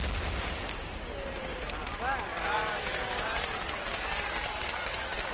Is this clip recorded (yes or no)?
no